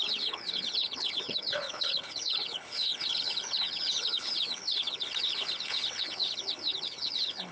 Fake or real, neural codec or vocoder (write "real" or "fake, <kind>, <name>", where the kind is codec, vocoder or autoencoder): fake, codec, HILCodec